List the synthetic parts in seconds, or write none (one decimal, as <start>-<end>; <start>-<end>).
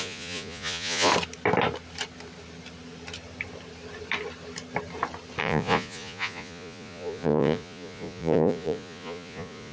0.0-1.1; 5.4-9.7